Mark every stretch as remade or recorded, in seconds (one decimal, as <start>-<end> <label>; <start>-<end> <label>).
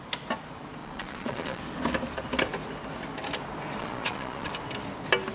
0.0-0.8 recorded; 0.8-1.6 remade; 1.6-3.8 recorded; 3.8-4.5 remade; 4.5-5.3 recorded